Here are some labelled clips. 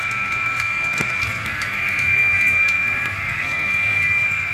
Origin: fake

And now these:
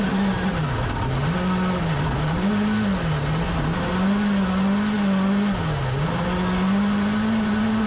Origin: real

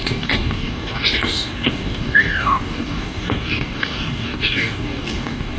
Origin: fake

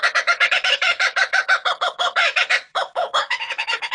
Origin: fake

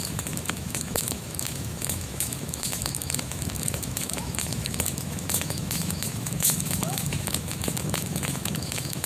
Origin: fake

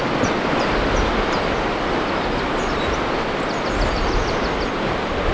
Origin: real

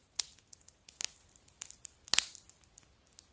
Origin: real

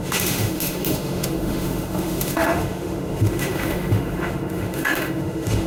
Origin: fake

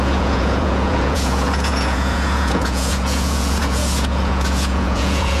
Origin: fake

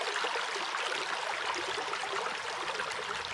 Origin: real